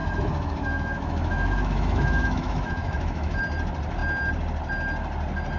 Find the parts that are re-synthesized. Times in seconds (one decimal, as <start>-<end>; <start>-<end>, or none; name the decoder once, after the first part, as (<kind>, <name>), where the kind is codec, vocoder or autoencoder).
0.0-3.4 (autoencoder, DAC-VAE)